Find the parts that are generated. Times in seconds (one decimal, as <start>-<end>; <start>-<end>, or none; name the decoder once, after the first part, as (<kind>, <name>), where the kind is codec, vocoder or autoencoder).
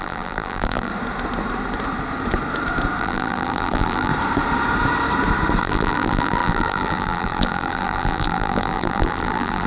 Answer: 0.0-0.9 (vocoder, BigVGAN v2); 3.0-4.1; 5.6-9.7